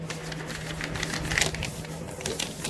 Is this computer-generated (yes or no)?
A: no